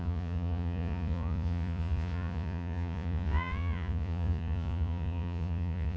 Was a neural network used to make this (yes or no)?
yes